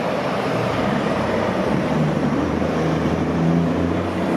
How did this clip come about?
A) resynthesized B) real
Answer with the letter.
A